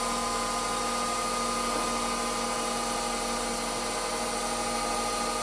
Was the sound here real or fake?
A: real